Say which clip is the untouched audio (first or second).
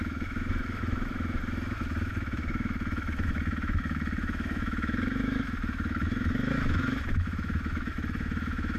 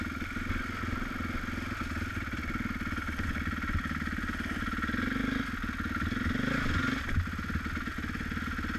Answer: second